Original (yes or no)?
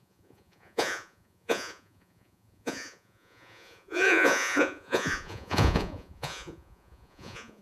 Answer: no